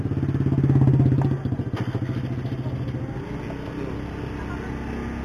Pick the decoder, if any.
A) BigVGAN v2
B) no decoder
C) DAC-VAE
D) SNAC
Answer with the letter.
B